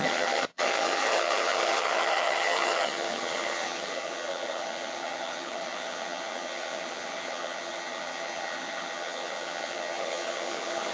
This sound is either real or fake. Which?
fake